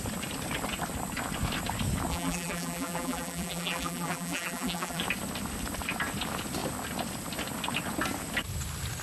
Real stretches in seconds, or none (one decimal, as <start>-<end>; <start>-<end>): 0.0-2.1; 5.0-9.0